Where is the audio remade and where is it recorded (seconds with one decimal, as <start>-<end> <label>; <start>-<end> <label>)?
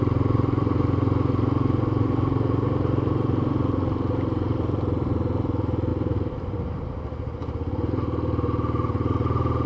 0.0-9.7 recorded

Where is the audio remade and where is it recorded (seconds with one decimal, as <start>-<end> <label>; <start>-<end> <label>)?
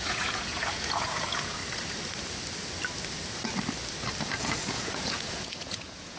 0.0-1.6 remade; 1.6-4.4 recorded; 4.4-6.2 remade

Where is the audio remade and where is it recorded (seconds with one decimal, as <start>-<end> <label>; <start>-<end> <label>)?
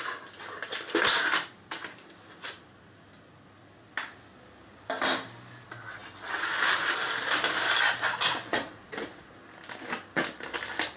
0.0-8.5 recorded; 8.5-9.3 remade; 9.3-11.0 recorded